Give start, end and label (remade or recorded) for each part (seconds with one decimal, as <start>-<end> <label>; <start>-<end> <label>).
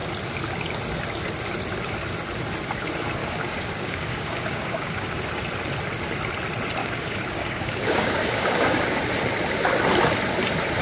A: 0.0-3.2 recorded; 3.2-5.1 remade; 5.1-6.8 recorded; 6.8-9.0 remade; 9.0-10.8 recorded